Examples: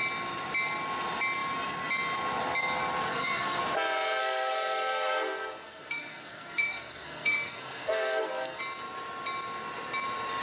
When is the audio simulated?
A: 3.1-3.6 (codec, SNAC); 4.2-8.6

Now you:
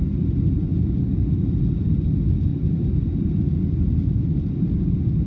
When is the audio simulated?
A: none

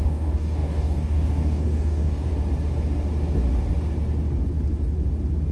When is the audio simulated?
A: 0.0-2.3 (codec, DAC)

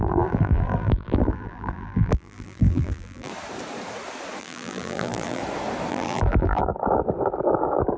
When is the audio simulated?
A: 0.0-3.3 (vocoder, BigVGAN v2); 4.4-5.4; 5.9-6.7

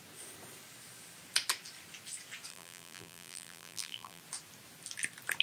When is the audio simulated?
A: 2.5-4.2 (vocoder, BigVGAN v2)